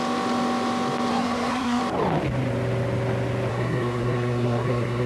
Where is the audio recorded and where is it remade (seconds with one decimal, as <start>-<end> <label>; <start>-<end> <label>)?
0.0-1.1 recorded; 1.1-1.8 remade; 1.8-3.5 recorded; 3.5-5.1 remade